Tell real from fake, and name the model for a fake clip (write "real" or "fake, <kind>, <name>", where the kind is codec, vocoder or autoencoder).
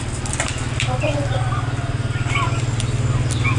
real